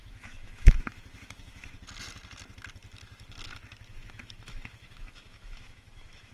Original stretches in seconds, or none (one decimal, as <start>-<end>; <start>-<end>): 1.6-3.9